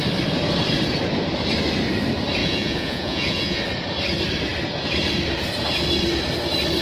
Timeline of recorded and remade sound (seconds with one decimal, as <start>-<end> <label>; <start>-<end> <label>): 0.0-2.4 recorded; 2.4-3.6 remade; 3.6-6.8 recorded